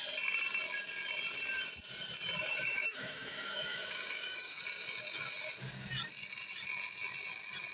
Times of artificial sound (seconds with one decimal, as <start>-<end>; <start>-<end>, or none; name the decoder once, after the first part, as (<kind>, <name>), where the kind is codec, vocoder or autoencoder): 2.5-4.6 (autoencoder, DAC-VAE)

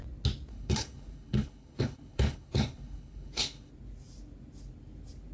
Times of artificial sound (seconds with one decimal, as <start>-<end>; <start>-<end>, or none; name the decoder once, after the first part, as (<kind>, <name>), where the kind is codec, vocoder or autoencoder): 0.5-3.7 (codec, HILCodec)

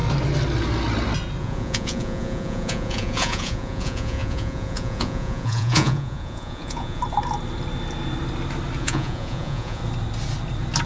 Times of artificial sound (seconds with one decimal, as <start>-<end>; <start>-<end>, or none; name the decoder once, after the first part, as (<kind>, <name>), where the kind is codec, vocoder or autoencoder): 1.4-7.0 (vocoder, Vocos); 8.8-9.8

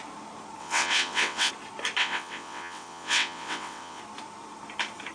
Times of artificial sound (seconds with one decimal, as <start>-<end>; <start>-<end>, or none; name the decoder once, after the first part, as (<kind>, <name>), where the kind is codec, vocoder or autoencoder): 0.6-1.5 (vocoder, WaveNeXt); 2.0-4.0

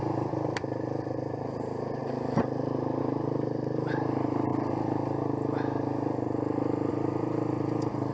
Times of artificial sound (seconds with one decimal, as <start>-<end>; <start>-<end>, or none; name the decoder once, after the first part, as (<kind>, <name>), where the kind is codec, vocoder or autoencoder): 0.0-2.0 (vocoder, BigVGAN v2); 3.0-4.5; 6.9-8.1

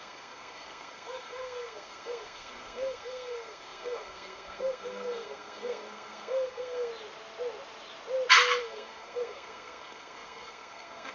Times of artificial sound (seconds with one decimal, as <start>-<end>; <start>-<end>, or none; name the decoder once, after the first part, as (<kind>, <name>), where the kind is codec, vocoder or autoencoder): 0.0-6.9 (codec, SNAC); 8.6-11.1